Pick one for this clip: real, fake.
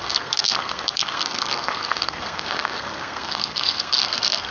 fake